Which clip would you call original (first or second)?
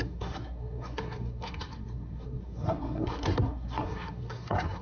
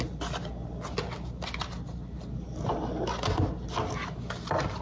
second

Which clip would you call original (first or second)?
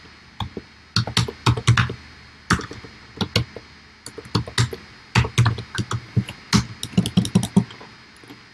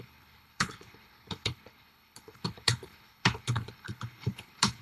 first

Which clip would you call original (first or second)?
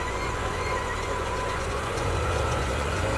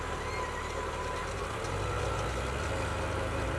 second